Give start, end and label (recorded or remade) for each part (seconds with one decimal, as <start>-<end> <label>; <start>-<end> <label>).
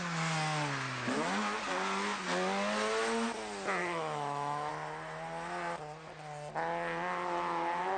0.0-3.8 recorded; 3.8-4.7 remade; 4.7-8.0 recorded